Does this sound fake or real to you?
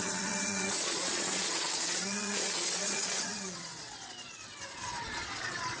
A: fake